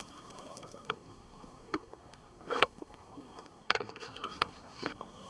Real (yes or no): no